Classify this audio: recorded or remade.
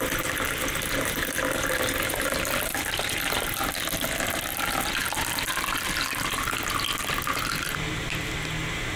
recorded